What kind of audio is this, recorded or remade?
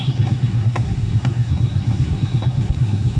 remade